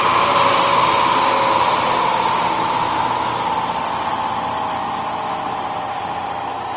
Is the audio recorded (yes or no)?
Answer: yes